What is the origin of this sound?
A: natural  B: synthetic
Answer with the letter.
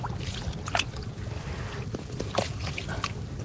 A